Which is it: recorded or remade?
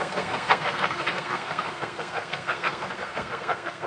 remade